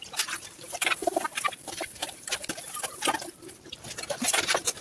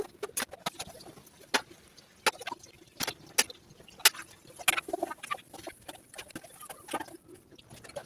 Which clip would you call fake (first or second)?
first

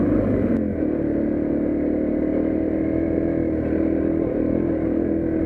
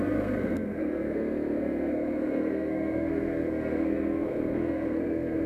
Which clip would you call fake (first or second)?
second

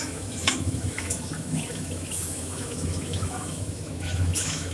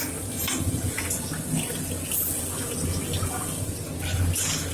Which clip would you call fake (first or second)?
first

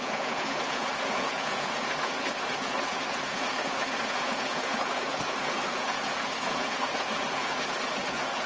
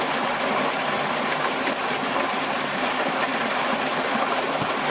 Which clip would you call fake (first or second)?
first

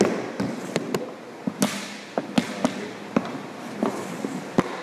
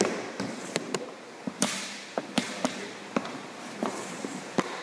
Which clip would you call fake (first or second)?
second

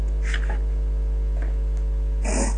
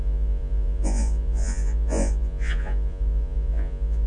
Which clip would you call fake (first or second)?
second